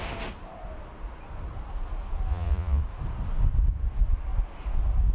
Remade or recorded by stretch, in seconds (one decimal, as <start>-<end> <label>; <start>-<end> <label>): 0.0-2.3 recorded; 2.3-2.8 remade; 2.8-5.1 recorded